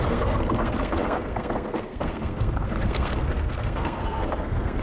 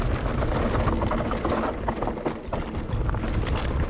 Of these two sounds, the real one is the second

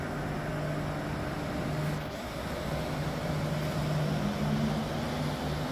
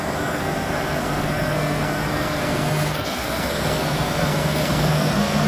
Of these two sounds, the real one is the first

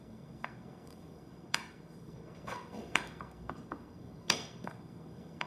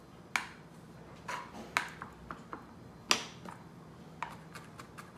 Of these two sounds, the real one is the second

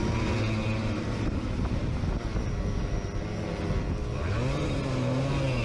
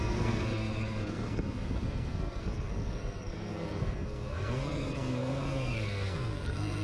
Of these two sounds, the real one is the first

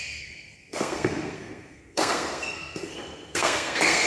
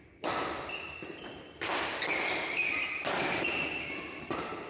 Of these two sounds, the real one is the second